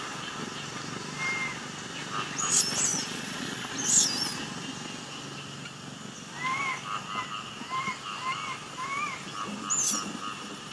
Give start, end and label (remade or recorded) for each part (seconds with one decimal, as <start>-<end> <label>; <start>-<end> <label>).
0.0-2.9 recorded; 2.9-3.7 remade; 3.7-10.7 recorded